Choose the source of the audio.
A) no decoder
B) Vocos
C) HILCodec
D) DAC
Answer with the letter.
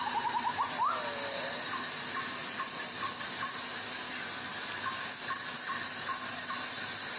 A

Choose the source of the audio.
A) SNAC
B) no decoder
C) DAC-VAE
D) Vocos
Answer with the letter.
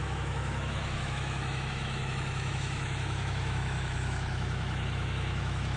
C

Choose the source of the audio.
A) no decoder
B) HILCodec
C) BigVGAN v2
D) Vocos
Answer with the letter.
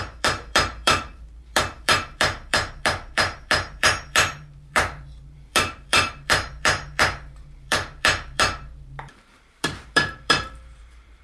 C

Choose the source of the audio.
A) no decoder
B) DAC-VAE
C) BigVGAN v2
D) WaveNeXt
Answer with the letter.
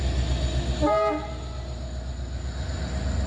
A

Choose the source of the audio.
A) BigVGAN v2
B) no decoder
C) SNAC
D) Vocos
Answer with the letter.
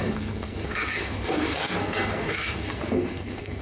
C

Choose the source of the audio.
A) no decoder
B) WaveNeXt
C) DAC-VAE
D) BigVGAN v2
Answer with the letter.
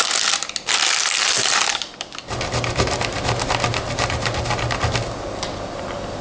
A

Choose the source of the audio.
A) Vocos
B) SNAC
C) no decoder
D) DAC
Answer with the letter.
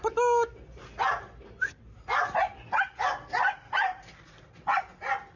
C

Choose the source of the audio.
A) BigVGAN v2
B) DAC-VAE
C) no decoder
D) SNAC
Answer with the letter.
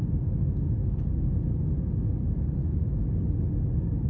C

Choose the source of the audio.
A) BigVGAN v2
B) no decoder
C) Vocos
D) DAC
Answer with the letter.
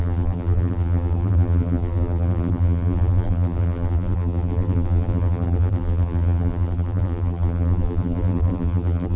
A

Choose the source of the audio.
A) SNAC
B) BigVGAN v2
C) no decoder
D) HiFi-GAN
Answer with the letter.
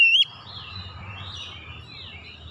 B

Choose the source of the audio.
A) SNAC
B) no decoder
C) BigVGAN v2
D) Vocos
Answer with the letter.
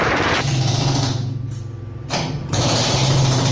C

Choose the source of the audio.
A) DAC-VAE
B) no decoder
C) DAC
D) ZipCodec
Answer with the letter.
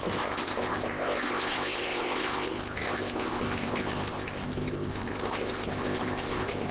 D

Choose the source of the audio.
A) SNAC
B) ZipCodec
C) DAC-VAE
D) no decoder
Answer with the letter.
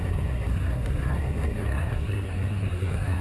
A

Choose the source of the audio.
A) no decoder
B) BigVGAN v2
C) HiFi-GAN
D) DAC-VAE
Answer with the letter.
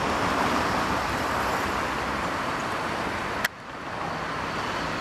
A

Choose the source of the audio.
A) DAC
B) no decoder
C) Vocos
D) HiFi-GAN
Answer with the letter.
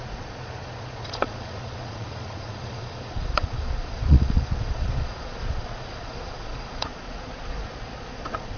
C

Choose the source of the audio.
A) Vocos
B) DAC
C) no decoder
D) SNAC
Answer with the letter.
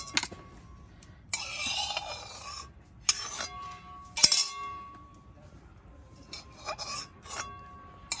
C